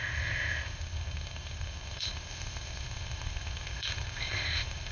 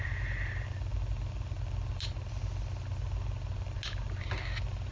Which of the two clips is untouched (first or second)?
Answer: second